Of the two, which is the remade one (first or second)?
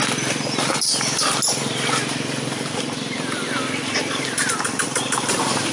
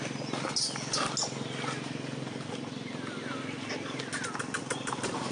first